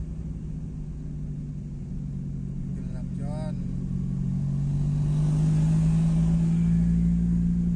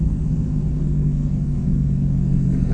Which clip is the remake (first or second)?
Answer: second